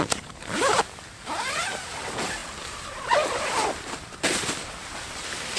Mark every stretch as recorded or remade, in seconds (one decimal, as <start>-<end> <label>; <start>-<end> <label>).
0.0-2.4 recorded; 2.4-5.6 remade